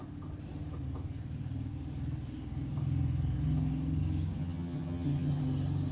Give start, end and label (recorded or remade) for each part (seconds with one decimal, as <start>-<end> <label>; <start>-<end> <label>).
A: 0.0-4.4 recorded; 4.4-5.4 remade; 5.4-5.9 recorded